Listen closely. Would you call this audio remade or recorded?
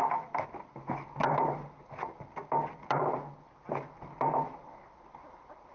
recorded